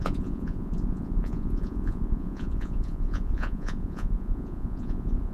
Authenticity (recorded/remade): remade